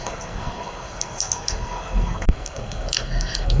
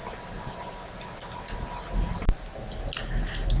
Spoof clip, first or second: first